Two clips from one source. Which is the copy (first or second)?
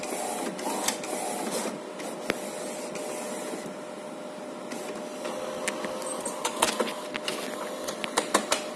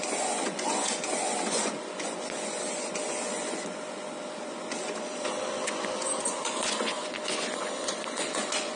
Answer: second